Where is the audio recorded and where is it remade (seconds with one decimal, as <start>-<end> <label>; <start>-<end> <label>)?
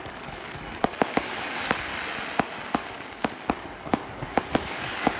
0.0-1.9 remade; 1.9-2.7 recorded; 2.7-5.2 remade